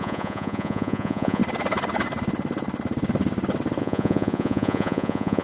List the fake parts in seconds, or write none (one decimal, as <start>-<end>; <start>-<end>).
0.0-1.4; 3.8-5.4